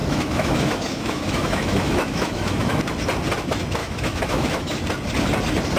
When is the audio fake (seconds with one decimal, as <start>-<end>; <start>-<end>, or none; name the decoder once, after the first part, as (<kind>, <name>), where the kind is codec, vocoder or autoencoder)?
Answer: 0.0-2.7 (autoencoder, DAC-VAE); 3.8-4.8

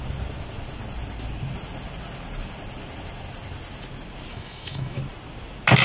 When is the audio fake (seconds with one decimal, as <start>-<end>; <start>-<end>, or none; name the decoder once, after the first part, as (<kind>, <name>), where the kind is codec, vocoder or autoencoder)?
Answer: 4.3-5.0 (autoencoder, DAC-VAE)

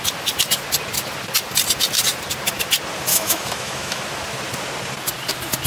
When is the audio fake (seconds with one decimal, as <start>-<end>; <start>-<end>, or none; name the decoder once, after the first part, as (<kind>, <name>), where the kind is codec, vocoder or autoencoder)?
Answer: 3.1-4.0 (autoencoder, DAC-VAE)

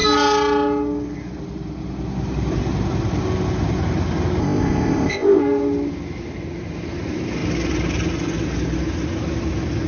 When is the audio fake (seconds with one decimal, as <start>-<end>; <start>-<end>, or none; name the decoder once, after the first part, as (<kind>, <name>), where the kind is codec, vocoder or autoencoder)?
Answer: 4.4-5.4 (codec, ZipCodec)

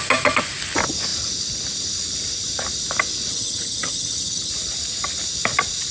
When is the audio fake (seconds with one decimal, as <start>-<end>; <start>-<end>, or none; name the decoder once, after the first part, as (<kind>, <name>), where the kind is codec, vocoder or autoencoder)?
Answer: 3.3-4.5 (vocoder, HiFi-GAN)

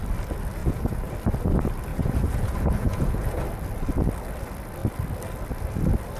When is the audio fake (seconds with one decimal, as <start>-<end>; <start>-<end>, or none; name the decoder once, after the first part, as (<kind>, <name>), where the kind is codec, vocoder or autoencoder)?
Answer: 0.6-1.1 (vocoder, Vocos); 1.9-3.4